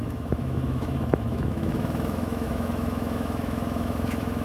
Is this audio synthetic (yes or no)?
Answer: yes